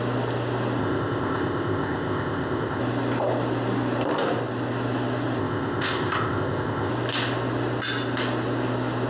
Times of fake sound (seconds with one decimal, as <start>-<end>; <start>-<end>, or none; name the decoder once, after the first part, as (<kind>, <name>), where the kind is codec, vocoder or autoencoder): 0.8-2.8 (codec, ZipCodec); 5.4-6.9